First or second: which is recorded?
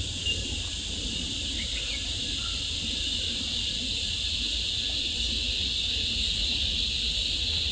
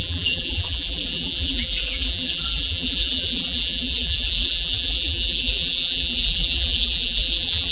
first